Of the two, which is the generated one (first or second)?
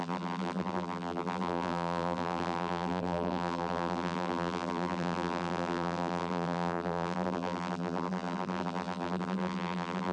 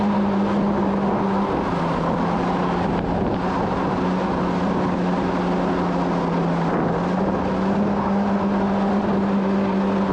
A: first